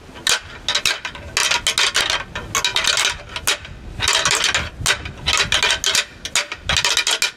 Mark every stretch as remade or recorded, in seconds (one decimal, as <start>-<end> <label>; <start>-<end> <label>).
0.0-7.4 recorded